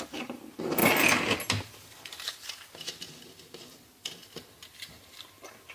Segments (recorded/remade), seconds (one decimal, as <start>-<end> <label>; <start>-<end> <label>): 0.0-5.7 recorded